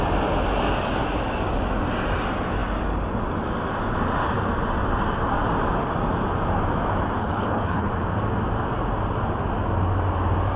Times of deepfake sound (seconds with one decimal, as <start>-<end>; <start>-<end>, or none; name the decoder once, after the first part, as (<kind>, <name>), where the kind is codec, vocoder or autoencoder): 7.2-7.9 (codec, HILCodec)